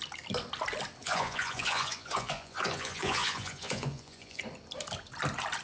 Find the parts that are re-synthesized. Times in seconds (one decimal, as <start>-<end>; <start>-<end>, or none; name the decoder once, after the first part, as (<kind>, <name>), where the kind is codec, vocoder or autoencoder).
1.0-4.4 (vocoder, Vocos)